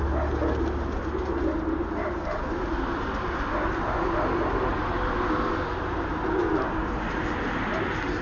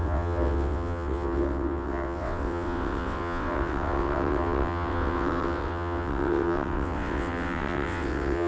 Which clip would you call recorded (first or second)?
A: first